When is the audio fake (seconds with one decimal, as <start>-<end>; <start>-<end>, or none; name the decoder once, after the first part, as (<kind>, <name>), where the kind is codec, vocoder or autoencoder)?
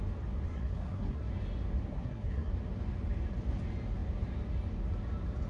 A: 0.5-1.3 (codec, SNAC); 1.9-2.5